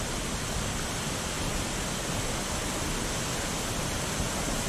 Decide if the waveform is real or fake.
real